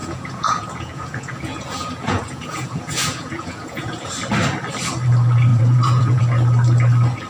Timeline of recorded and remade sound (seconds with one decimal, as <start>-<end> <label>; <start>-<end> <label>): 0.0-4.1 remade; 4.1-5.5 recorded; 5.5-6.2 remade; 6.2-7.3 recorded